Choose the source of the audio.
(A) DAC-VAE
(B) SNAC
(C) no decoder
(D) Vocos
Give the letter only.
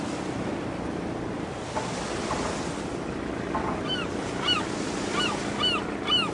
C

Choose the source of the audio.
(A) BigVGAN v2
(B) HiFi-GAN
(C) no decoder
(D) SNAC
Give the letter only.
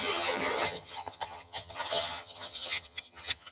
B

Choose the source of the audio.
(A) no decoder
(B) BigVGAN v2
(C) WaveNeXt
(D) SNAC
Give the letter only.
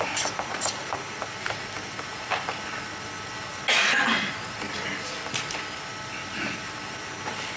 A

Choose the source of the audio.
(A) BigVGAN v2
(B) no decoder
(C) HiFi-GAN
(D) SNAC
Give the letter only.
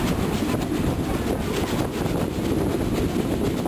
B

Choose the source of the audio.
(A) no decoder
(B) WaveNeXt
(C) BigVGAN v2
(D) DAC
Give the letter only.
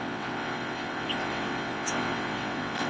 B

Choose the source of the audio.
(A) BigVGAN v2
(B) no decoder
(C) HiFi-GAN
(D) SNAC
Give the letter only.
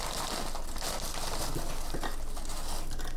B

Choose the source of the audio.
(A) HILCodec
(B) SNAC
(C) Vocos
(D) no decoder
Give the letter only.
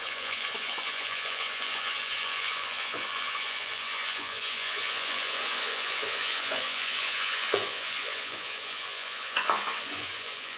C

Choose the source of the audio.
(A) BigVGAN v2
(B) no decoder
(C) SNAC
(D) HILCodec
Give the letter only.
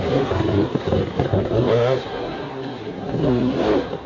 C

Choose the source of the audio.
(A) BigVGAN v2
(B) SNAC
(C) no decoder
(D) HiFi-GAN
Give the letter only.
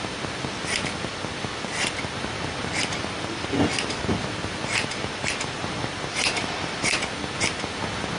C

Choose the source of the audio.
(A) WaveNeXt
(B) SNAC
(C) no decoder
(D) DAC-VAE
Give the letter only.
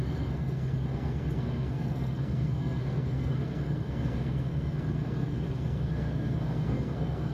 B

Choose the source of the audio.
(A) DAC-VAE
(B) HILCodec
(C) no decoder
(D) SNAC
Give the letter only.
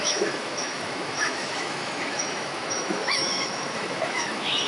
A